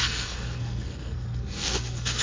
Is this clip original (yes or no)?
no